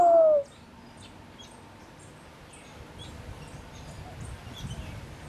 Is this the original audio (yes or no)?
yes